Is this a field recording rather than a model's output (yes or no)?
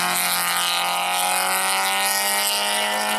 yes